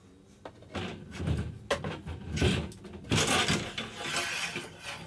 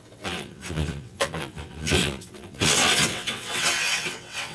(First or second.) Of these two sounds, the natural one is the first